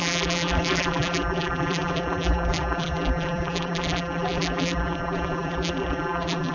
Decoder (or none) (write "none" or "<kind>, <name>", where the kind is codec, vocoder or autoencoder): vocoder, BigVGAN v2